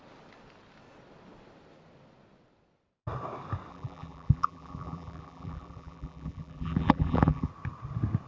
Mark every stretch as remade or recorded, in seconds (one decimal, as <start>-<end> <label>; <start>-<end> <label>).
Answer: 0.0-3.7 recorded; 3.7-7.5 remade; 7.5-8.3 recorded